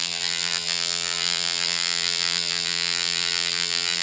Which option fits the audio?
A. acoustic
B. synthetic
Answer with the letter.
B